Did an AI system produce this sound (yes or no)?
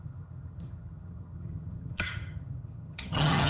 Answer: yes